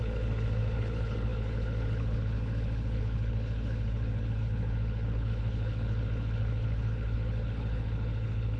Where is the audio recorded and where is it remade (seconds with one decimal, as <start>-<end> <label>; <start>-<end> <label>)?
0.0-8.6 remade